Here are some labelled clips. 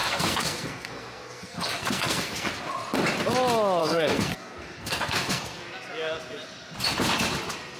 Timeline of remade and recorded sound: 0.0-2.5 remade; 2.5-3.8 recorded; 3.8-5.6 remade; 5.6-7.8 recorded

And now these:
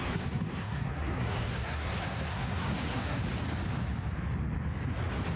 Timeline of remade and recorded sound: 0.0-3.2 remade; 3.2-5.4 recorded

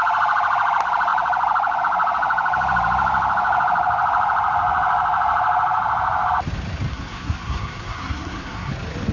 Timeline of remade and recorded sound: 0.0-6.9 recorded; 6.9-8.7 remade; 8.7-9.1 recorded